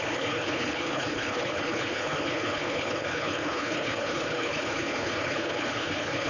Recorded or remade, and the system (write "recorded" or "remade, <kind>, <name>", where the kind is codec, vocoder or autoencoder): remade, codec, HILCodec